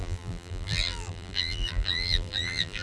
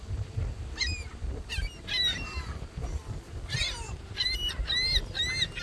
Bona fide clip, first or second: second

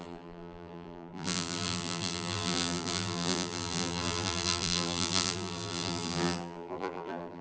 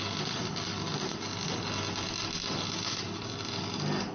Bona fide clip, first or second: second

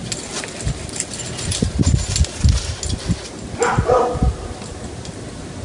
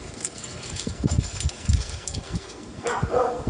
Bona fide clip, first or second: first